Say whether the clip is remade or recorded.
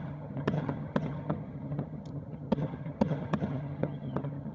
remade